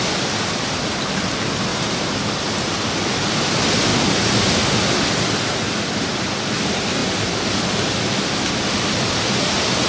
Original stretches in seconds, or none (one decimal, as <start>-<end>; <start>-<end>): 0.0-1.7; 2.9-3.9; 4.4-7.0; 7.6-9.9